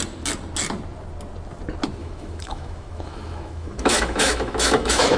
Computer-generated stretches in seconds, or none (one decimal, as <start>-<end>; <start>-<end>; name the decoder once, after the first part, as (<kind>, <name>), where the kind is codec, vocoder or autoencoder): 2.0-5.2 (autoencoder, DAC-VAE)